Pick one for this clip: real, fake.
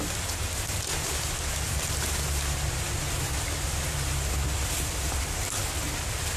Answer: real